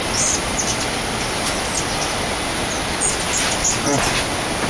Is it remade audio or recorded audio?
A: recorded